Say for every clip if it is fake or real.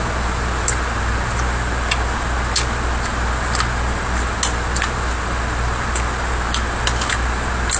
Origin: real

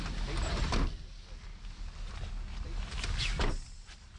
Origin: real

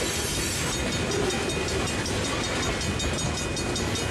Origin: real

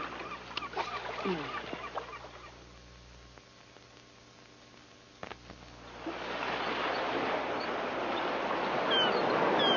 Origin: real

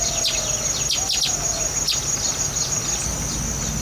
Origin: real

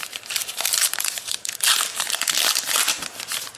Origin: fake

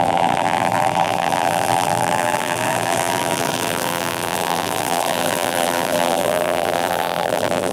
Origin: fake